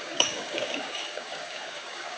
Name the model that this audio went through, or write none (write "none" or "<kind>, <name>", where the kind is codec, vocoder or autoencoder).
codec, DAC